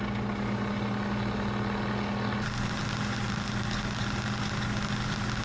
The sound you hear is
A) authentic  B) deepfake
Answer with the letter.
A